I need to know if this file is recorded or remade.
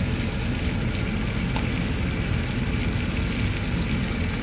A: recorded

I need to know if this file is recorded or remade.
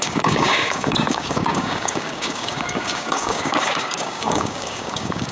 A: remade